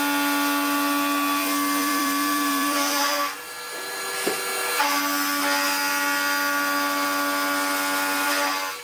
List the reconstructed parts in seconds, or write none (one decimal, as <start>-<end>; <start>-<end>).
1.8-3.4